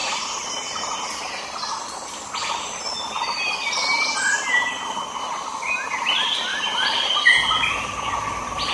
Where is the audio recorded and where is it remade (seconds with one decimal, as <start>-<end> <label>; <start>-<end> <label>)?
0.0-6.5 recorded; 6.5-7.1 remade; 7.1-8.7 recorded